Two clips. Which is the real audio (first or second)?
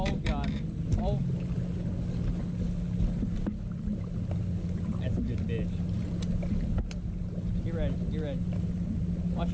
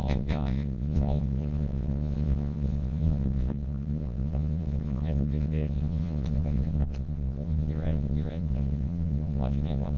first